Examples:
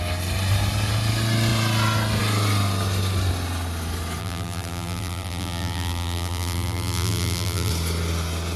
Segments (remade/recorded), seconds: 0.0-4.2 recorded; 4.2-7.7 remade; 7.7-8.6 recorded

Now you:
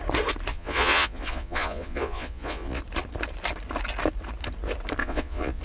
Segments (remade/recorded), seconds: 0.0-0.5 recorded; 0.5-2.8 remade; 2.8-5.0 recorded; 5.0-5.6 remade

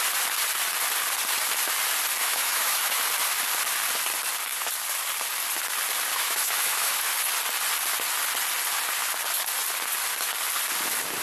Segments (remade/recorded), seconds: 0.0-2.2 recorded; 2.2-3.0 remade; 3.0-6.1 recorded; 6.1-7.1 remade; 7.1-11.2 recorded

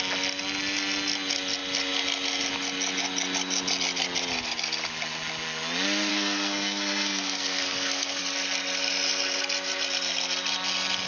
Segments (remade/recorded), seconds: 0.0-6.1 recorded; 6.1-8.2 remade; 8.2-11.1 recorded

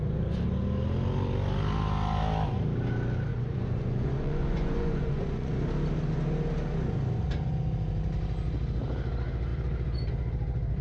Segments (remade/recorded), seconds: 0.0-3.3 recorded; 3.3-5.5 remade; 5.5-10.8 recorded